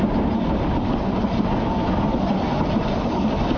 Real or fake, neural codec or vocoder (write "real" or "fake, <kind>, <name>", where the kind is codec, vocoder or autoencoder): real